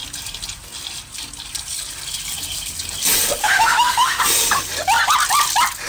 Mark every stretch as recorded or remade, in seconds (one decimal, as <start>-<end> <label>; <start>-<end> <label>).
0.0-3.4 recorded; 3.4-4.2 remade; 4.2-5.9 recorded